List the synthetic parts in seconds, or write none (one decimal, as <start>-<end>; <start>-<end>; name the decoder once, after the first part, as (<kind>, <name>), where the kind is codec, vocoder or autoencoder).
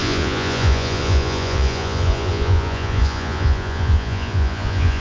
0.0-5.0 (vocoder, Vocos)